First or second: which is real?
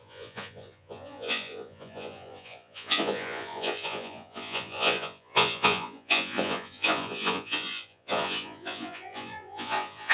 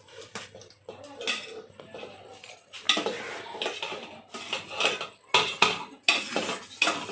second